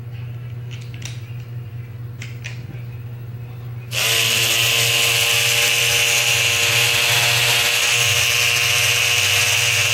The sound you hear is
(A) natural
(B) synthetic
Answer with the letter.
A